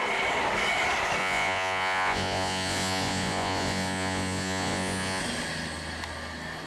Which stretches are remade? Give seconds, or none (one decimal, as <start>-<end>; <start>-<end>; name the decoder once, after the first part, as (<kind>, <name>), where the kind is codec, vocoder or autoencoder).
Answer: 1.2-5.2 (vocoder, Vocos)